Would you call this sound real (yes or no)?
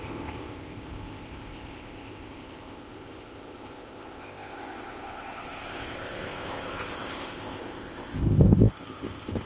no